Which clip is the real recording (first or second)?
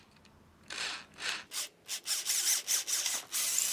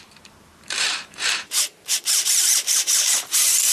first